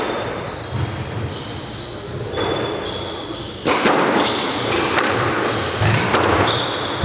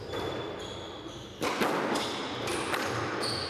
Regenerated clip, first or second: first